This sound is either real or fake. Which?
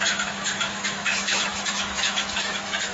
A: fake